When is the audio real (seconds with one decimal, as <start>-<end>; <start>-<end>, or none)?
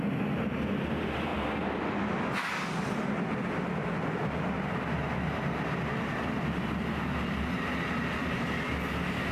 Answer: 0.0-9.3